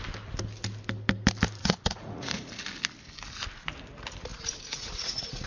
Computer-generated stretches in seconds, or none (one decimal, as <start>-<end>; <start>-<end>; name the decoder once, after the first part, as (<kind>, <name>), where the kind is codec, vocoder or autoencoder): 1.6-2.5 (vocoder, Vocos); 4.3-5.5